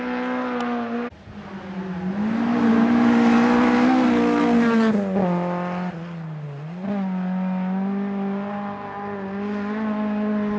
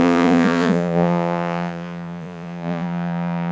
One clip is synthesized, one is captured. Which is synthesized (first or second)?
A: second